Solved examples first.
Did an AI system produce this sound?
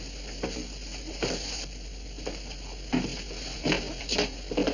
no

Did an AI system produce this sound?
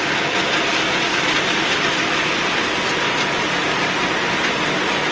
no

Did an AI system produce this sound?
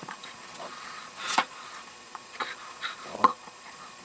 yes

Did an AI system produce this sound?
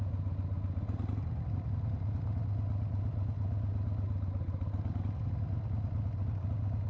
no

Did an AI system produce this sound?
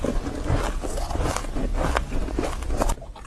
no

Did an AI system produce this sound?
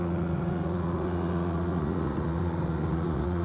yes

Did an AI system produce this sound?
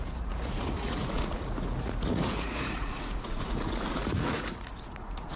yes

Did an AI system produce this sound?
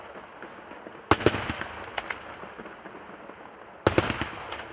no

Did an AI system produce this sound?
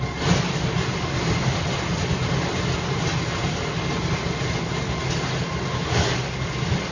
no